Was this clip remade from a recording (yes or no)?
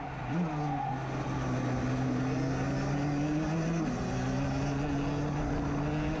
no